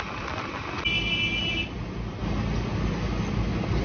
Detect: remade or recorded recorded